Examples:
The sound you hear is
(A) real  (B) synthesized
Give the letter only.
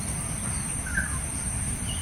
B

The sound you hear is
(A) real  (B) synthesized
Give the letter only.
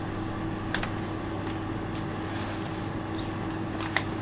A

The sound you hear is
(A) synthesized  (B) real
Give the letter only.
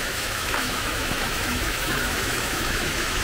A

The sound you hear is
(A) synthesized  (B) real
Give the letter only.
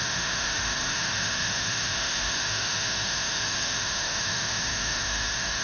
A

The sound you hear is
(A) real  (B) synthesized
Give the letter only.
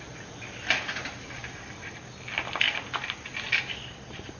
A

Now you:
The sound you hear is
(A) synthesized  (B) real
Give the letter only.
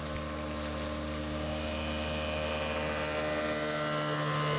B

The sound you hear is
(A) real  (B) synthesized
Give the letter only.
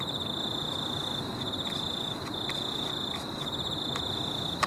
A